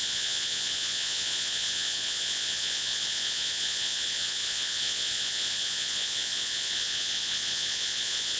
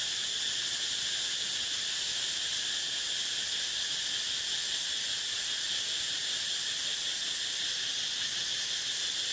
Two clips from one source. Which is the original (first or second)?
second